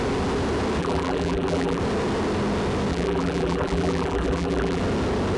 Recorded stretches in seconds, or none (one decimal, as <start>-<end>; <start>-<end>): 0.0-0.8; 1.8-2.9; 4.8-5.4